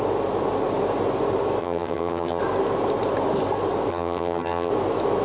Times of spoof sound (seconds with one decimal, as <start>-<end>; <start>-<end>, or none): 1.6-2.4; 3.9-4.7